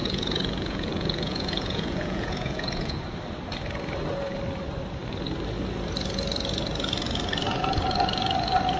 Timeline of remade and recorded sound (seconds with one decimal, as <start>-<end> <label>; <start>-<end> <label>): 0.0-3.0 remade; 3.0-8.8 recorded